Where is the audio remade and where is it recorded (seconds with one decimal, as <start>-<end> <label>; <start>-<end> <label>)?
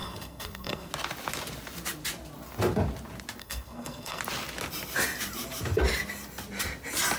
0.0-0.9 remade; 0.9-3.4 recorded; 3.4-4.2 remade; 4.2-7.2 recorded